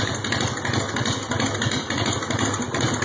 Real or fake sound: real